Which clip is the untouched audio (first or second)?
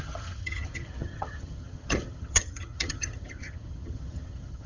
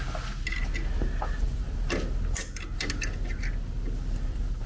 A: second